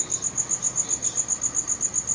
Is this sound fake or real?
real